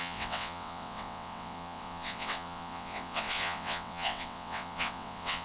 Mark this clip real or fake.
fake